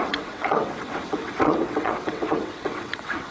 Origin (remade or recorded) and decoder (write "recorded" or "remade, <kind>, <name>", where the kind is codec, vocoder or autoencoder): remade, vocoder, WaveNeXt